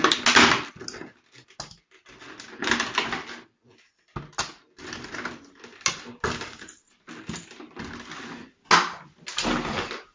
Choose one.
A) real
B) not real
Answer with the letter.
A